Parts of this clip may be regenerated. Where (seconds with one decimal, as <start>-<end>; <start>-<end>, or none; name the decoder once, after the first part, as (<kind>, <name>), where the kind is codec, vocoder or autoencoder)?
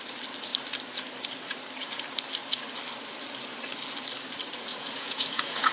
4.7-5.7 (vocoder, Vocos)